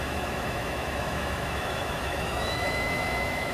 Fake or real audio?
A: fake